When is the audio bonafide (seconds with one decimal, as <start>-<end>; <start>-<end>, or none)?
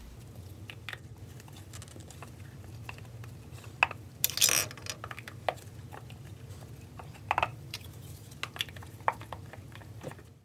0.0-7.5; 8.3-10.4